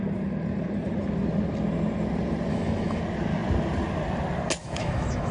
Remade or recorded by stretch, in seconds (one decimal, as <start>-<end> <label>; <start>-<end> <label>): 0.0-2.5 recorded; 2.5-3.0 remade; 3.0-4.6 recorded; 4.6-5.3 remade